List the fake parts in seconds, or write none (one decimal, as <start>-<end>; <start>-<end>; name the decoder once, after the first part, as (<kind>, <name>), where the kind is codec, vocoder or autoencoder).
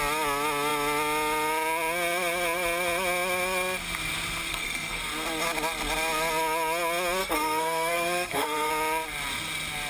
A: 4.5-5.0 (codec, SNAC); 7.2-8.7